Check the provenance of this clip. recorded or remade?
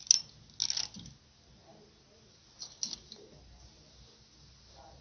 recorded